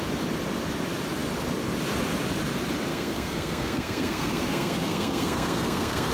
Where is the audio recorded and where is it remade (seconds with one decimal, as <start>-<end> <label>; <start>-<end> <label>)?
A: 0.0-2.9 recorded; 2.9-6.1 remade